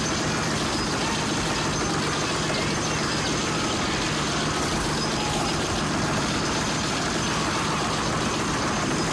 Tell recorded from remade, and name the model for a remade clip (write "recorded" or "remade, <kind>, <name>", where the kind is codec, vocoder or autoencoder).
recorded